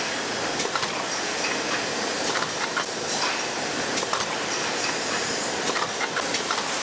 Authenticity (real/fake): real